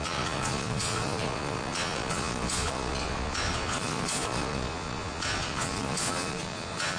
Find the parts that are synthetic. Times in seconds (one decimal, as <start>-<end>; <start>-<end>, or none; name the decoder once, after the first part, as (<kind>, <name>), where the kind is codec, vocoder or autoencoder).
0.0-7.0 (vocoder, Vocos)